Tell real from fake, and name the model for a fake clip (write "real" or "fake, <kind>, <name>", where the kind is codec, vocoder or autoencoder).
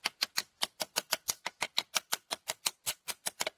real